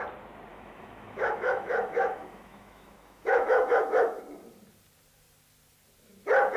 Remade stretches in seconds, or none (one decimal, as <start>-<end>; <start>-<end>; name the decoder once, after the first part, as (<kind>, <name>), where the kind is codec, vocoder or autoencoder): 0.5-4.2 (autoencoder, DAC-VAE)